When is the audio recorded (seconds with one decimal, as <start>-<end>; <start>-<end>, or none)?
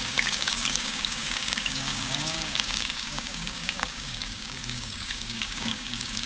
none